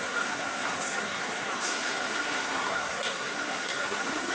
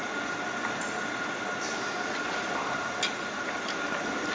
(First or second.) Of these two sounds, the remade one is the first